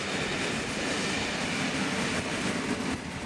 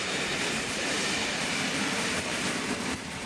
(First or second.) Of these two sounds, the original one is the first